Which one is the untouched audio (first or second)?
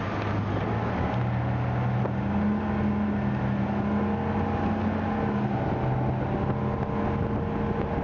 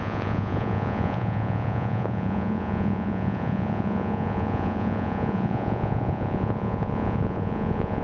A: first